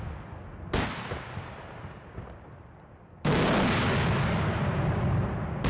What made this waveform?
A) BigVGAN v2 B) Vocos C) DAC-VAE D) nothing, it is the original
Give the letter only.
D